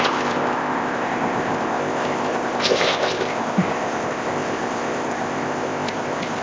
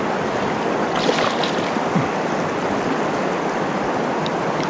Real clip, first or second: second